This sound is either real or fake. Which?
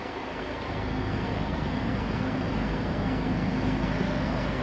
fake